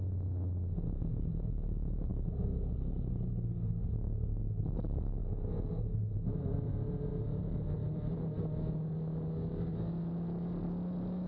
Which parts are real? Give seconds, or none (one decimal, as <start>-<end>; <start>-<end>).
0.0-11.3